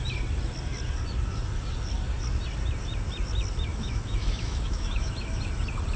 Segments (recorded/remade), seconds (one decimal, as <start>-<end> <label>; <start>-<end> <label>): 0.0-3.7 recorded; 3.7-5.4 remade; 5.4-6.0 recorded